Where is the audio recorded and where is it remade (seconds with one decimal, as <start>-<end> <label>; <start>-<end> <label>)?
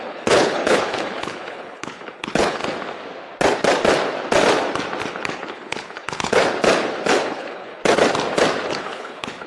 0.0-2.6 remade; 2.6-5.1 recorded; 5.1-6.4 remade; 6.4-7.2 recorded; 7.2-7.8 remade; 7.8-8.7 recorded; 8.7-9.5 remade